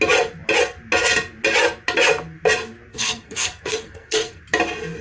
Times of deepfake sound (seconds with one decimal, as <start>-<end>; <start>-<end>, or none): 2.9-4.4